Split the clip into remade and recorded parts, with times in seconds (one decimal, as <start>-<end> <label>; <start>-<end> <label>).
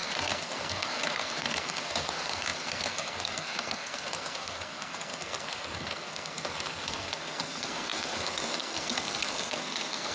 0.0-10.1 remade